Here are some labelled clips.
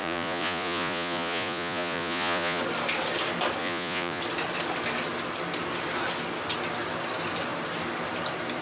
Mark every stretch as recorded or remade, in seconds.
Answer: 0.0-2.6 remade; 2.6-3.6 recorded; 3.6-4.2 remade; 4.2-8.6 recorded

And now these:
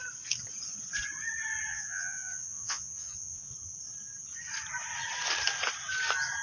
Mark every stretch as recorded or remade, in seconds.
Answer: 0.0-1.7 recorded; 1.7-3.5 remade; 3.5-6.4 recorded

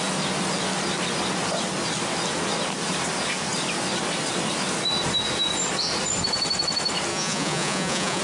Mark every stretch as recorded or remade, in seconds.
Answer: 0.0-7.1 recorded; 7.1-8.2 remade

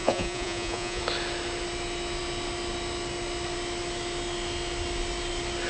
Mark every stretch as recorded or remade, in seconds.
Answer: 0.0-1.0 remade; 1.0-5.7 recorded

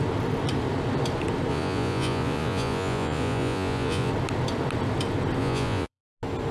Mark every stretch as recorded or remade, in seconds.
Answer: 0.0-1.5 recorded; 1.5-4.1 remade; 4.1-5.4 recorded; 5.4-6.0 remade; 6.0-6.5 recorded

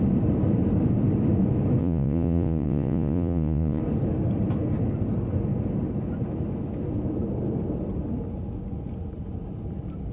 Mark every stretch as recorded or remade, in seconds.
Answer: 0.0-1.8 recorded; 1.8-3.8 remade; 3.8-10.1 recorded